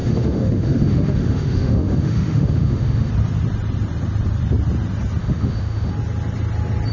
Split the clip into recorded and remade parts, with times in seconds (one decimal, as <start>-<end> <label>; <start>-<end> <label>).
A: 0.0-3.1 remade; 3.1-5.2 recorded; 5.2-5.9 remade; 5.9-6.9 recorded